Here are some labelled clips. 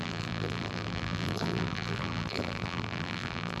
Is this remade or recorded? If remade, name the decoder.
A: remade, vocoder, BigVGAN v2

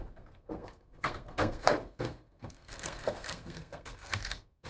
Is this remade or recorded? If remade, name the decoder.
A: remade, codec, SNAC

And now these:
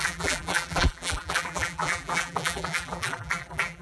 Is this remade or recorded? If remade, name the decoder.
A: remade, vocoder, BigVGAN v2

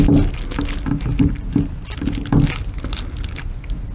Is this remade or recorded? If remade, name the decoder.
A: recorded